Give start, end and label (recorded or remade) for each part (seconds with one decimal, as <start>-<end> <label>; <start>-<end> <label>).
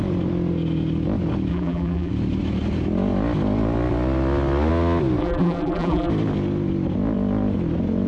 0.0-1.5 recorded; 1.5-2.1 remade; 2.1-5.2 recorded; 5.2-6.1 remade; 6.1-8.1 recorded